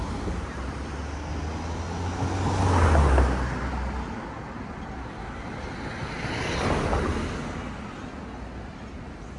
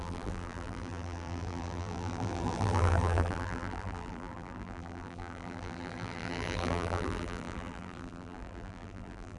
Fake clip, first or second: second